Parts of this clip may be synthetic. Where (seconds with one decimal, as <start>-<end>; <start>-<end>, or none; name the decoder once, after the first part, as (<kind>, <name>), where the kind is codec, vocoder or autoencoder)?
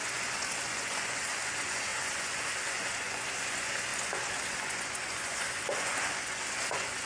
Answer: 0.0-7.1 (vocoder, Vocos)